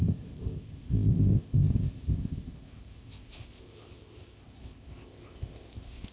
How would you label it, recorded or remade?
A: remade